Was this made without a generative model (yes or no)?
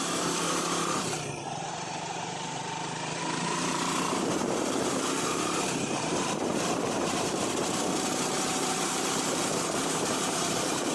no